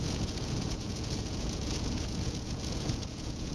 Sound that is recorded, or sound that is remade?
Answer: remade